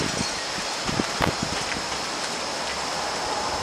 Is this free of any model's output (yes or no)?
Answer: yes